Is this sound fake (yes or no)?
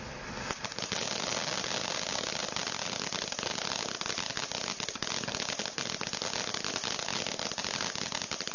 no